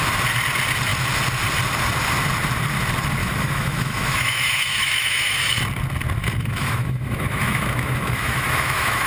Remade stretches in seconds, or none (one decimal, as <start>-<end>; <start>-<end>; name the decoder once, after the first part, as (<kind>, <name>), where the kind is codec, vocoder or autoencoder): 3.2-5.6 (autoencoder, DAC-VAE); 6.2-9.1